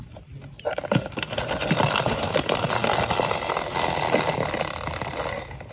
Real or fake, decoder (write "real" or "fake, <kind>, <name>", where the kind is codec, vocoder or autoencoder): real